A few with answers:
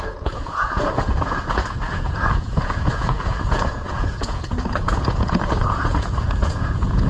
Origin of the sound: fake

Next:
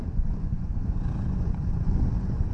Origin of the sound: fake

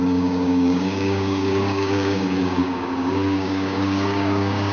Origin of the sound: fake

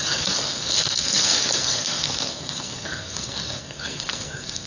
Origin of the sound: fake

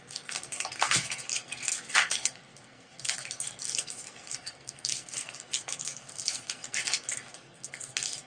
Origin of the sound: fake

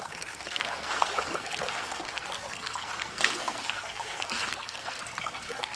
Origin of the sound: fake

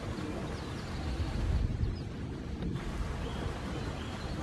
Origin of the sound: real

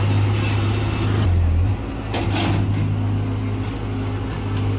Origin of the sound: real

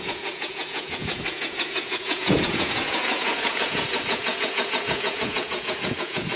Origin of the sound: fake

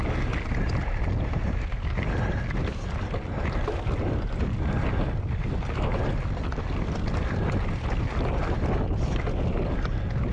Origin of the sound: real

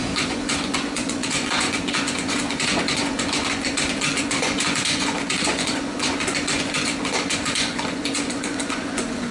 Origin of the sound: fake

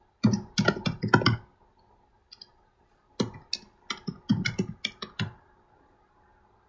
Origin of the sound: real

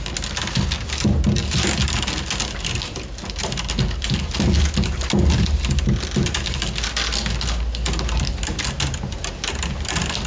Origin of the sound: real